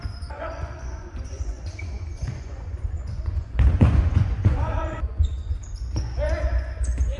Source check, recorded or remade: remade